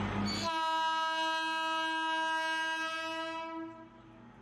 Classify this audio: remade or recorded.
recorded